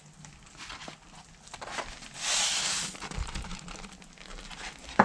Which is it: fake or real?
real